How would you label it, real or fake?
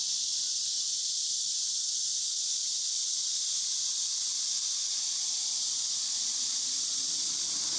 fake